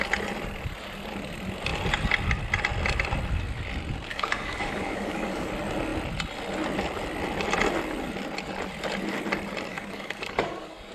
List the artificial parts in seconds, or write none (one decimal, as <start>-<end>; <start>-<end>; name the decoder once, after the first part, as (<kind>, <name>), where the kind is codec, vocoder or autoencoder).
4.1-5.5 (codec, DAC); 9.7-10.9